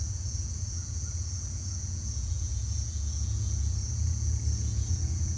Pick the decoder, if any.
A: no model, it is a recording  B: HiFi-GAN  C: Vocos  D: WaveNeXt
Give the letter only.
C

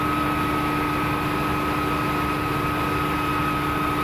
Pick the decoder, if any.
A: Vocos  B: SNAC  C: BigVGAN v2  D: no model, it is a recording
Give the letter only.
D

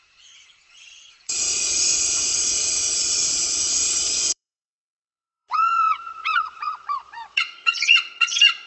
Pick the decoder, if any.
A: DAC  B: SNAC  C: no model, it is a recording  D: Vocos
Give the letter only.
D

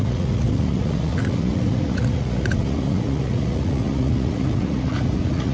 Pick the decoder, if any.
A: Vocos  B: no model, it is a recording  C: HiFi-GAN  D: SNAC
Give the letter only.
A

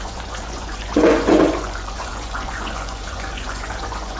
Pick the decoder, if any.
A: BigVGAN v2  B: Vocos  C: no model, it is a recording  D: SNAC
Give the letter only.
B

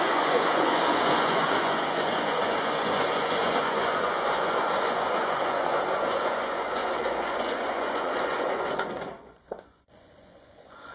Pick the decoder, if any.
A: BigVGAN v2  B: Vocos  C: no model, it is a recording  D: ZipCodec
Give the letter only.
B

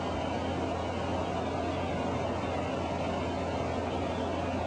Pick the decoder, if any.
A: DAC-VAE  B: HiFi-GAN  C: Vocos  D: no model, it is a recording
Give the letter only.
D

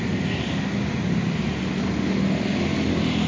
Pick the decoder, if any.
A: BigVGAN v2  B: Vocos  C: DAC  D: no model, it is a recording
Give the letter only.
D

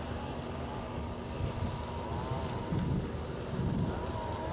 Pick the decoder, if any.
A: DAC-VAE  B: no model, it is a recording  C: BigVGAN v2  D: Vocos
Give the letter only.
B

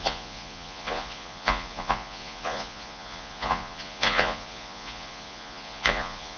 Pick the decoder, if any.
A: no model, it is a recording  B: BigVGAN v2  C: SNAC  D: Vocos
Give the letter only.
D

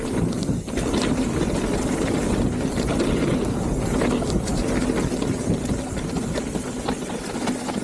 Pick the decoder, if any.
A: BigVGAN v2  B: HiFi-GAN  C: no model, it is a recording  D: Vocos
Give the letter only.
C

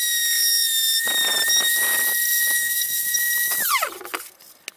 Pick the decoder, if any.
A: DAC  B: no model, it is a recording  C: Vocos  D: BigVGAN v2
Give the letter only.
B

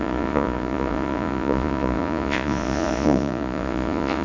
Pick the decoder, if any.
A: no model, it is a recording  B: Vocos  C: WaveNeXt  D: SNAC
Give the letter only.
B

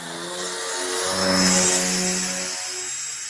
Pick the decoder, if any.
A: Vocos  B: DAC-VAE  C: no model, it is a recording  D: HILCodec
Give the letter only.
C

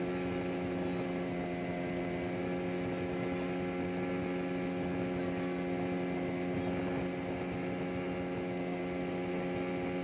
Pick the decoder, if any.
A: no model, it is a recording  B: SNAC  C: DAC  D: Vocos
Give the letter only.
A